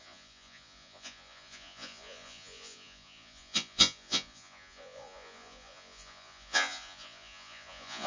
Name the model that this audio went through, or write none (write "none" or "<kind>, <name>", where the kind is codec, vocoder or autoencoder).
vocoder, Vocos